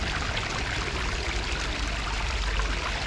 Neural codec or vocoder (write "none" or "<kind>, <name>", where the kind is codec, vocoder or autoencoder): none